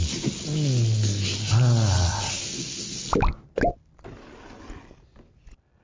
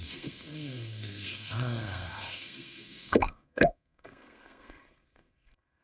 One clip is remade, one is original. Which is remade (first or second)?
second